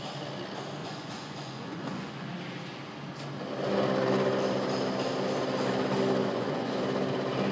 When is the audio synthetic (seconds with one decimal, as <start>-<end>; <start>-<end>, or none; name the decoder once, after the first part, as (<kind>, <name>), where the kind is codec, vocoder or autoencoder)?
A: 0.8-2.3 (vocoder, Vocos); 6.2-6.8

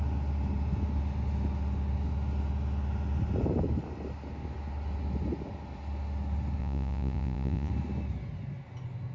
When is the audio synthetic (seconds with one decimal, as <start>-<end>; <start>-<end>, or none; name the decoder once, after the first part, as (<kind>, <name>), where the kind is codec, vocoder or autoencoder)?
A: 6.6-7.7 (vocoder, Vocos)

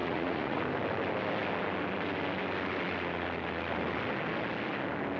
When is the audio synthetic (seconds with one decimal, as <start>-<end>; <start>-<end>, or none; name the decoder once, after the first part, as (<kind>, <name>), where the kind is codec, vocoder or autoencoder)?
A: 0.0-0.6 (vocoder, Vocos)

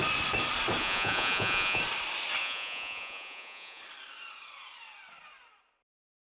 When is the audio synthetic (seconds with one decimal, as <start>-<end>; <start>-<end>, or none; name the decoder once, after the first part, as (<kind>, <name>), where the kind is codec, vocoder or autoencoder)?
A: 0.8-1.8 (vocoder, Vocos); 2.4-3.8

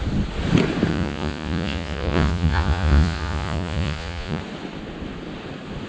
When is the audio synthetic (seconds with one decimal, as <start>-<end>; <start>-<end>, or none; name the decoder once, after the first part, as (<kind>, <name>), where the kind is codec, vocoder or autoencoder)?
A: 0.9-4.4 (vocoder, Vocos)